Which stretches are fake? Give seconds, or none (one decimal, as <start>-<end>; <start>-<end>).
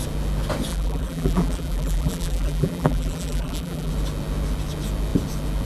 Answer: 0.7-3.9